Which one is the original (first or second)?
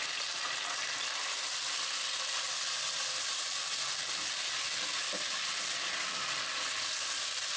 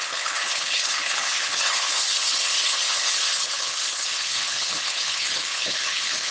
first